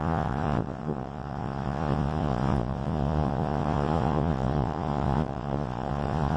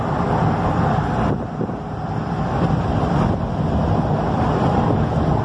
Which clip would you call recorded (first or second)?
second